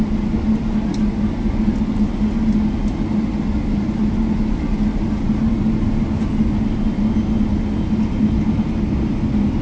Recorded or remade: recorded